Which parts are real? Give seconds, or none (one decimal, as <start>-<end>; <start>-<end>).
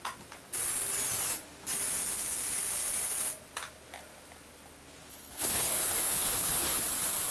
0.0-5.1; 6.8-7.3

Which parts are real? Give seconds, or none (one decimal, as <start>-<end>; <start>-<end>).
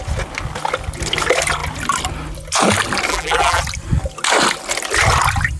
0.0-3.1; 3.6-5.6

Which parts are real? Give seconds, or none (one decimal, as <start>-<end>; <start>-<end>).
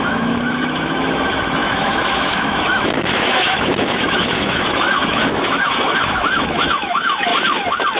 7.3-8.0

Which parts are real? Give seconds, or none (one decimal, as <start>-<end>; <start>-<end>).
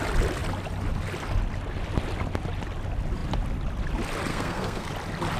0.0-4.3; 4.9-5.4